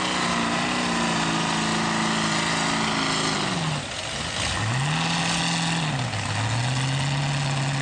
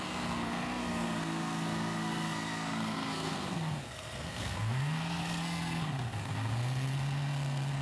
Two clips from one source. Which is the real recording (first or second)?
first